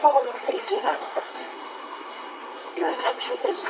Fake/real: fake